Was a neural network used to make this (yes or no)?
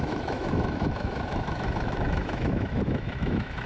yes